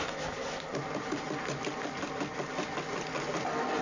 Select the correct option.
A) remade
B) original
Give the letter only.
B